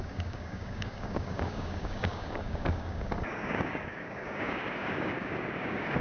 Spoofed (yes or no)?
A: yes